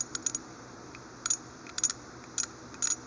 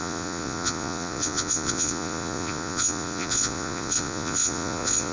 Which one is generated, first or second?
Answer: second